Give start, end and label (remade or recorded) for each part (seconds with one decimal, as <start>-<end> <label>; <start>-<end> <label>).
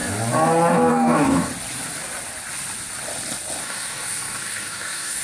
0.0-0.9 recorded; 0.9-1.5 remade; 1.5-3.6 recorded; 3.6-5.2 remade